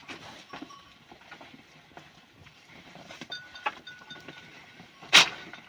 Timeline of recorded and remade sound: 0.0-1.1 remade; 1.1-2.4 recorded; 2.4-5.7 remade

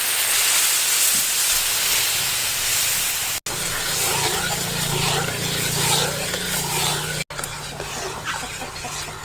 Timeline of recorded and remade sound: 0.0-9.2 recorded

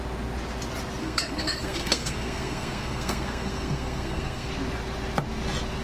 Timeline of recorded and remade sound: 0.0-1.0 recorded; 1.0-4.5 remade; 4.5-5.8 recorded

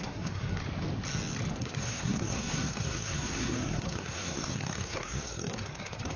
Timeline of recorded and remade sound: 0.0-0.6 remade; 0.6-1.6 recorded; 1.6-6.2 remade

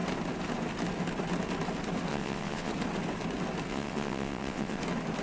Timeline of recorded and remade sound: 0.0-2.1 recorded; 2.1-2.7 remade; 2.7-3.7 recorded; 3.7-4.8 remade; 4.8-5.2 recorded